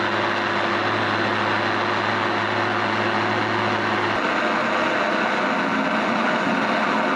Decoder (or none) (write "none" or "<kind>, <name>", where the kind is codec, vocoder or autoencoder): none